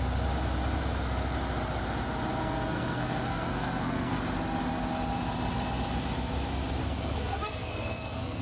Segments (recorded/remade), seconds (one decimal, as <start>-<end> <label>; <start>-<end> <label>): 0.0-2.4 recorded; 2.4-4.2 remade; 4.2-6.8 recorded; 6.8-8.4 remade